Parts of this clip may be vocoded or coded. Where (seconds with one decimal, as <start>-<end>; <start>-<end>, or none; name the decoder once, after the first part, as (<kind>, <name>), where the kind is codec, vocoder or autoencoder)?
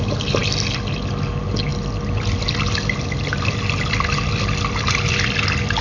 none